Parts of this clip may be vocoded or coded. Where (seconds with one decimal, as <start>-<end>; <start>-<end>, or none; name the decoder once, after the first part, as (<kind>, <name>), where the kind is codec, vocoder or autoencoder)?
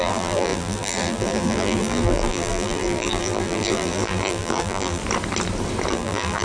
0.0-5.0 (vocoder, BigVGAN v2); 5.9-6.4